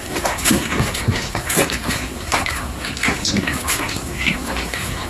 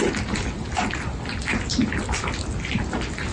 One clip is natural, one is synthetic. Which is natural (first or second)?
second